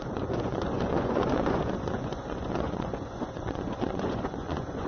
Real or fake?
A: fake